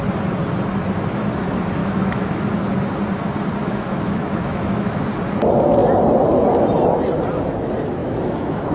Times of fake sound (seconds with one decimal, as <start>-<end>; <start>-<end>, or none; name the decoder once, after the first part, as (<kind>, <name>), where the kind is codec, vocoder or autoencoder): 1.8-2.4 (autoencoder, DAC-VAE); 3.6-5.0; 8.0-8.7